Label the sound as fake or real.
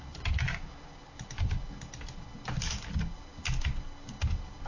real